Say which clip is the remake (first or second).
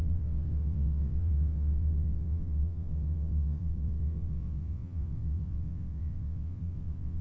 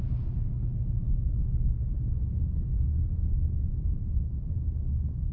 first